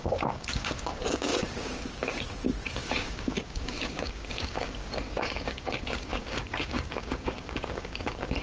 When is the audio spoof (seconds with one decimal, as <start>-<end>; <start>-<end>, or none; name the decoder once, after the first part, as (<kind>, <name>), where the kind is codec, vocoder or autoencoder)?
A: 0.0-8.4 (codec, DAC)